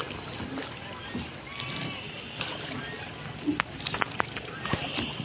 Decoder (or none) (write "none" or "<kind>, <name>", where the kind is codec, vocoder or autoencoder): none